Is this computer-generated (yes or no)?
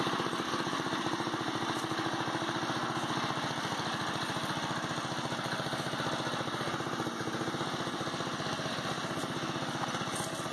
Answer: no